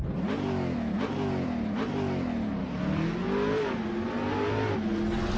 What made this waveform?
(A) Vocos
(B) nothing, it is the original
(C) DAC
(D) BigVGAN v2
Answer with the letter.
B